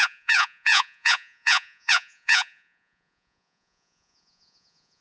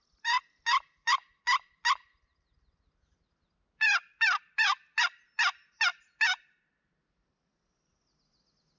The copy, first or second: first